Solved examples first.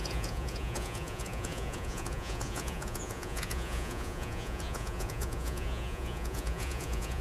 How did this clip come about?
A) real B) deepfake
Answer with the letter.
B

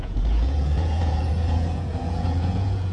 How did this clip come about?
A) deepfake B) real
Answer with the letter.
A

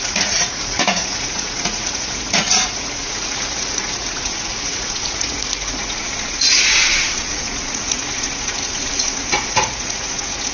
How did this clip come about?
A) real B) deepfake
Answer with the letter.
B